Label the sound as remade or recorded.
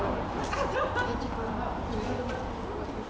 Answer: recorded